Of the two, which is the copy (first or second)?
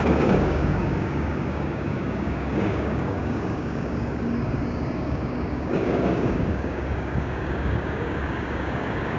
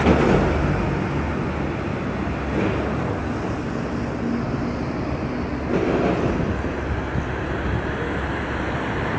first